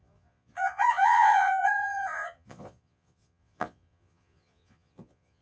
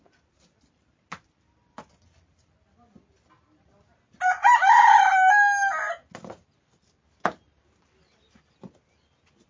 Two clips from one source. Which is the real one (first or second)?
second